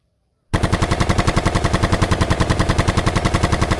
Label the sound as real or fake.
real